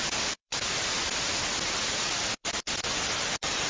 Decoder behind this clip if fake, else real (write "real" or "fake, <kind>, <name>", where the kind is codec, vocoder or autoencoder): fake, vocoder, BigVGAN v2